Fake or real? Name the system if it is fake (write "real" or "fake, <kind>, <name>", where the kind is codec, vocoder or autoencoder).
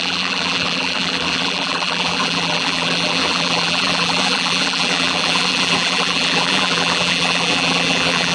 fake, vocoder, BigVGAN v2